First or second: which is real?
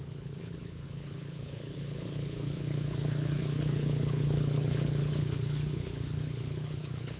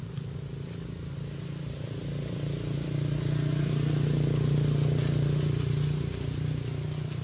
second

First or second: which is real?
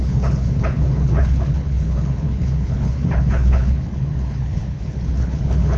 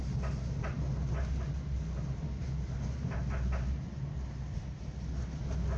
second